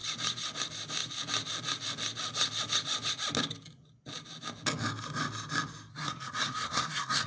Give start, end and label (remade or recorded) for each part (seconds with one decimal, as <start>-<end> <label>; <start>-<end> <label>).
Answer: 0.0-5.9 recorded; 5.9-7.3 remade